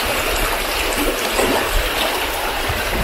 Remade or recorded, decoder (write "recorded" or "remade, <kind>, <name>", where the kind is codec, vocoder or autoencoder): remade, vocoder, BigVGAN v2